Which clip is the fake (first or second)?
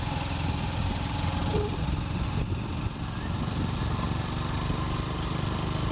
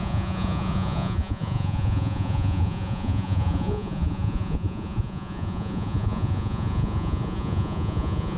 second